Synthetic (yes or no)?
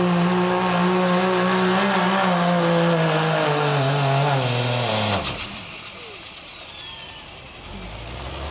no